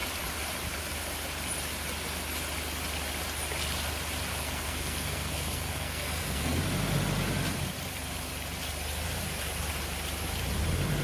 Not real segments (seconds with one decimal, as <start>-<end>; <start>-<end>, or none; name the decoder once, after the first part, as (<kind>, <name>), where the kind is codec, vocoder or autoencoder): 4.3-6.6 (codec, SNAC)